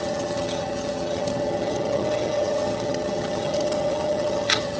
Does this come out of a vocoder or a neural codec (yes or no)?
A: yes